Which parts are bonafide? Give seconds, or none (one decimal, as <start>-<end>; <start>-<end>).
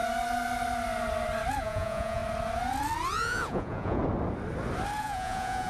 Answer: 0.0-1.6; 2.2-3.1; 4.0-5.0